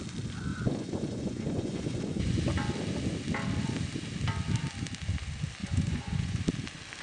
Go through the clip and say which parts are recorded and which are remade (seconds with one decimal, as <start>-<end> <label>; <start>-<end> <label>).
0.0-0.5 recorded; 0.5-2.4 remade; 2.4-5.6 recorded; 5.6-6.4 remade; 6.4-7.0 recorded